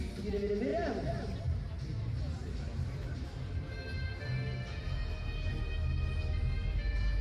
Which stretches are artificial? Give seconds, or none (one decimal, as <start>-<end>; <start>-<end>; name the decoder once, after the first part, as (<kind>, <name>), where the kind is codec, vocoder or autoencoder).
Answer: 0.7-3.5 (vocoder, BigVGAN v2)